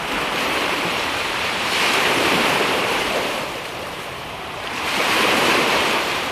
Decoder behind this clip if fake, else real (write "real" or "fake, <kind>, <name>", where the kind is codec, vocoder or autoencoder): fake, vocoder, BigVGAN v2